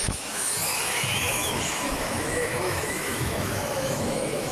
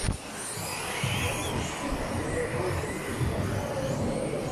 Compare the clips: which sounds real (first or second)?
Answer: second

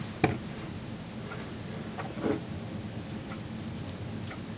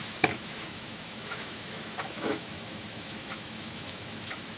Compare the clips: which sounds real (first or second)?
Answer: first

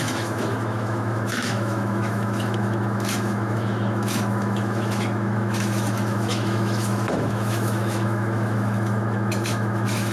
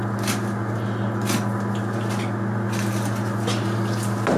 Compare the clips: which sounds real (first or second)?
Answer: second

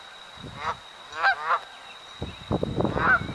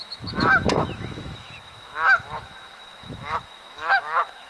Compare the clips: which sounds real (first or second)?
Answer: first